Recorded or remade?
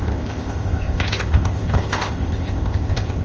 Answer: remade